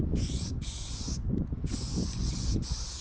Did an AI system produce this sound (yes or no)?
yes